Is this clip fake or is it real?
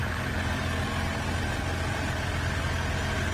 real